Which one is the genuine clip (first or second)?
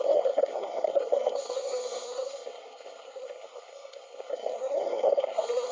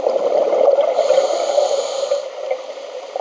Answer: second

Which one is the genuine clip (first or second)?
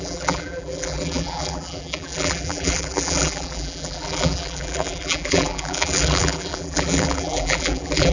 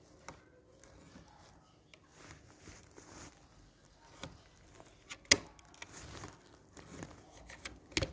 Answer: second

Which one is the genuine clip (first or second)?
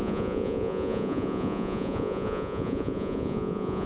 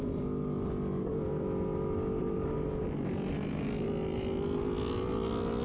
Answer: second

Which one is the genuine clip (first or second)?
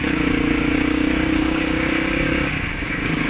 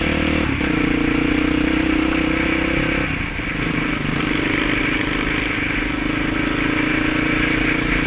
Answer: second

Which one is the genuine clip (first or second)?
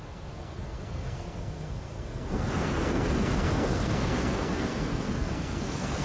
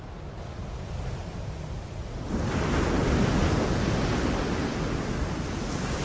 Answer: second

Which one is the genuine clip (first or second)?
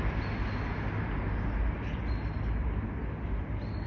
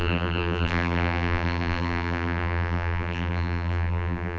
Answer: first